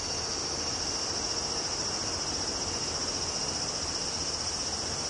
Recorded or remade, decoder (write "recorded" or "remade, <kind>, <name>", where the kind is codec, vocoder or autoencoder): recorded